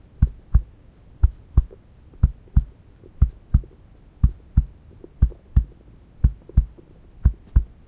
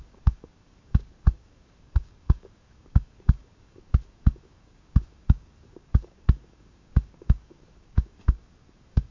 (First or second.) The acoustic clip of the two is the first